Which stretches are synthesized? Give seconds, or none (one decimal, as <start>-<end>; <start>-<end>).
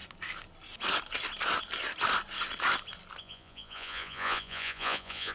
3.2-5.3